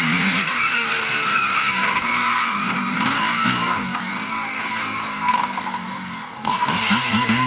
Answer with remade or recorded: remade